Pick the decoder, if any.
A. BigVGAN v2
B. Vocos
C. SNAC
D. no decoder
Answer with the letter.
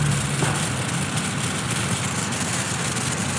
D